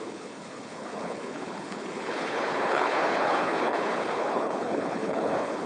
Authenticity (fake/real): fake